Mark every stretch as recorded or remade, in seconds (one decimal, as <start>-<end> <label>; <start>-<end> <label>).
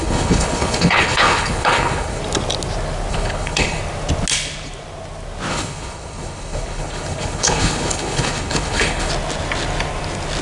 0.0-2.2 remade; 2.2-3.1 recorded; 3.1-3.8 remade; 3.8-5.5 recorded; 5.5-9.1 remade; 9.1-10.4 recorded